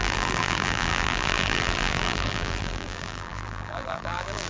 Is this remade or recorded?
remade